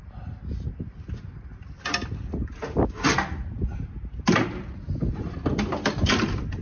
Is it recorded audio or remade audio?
recorded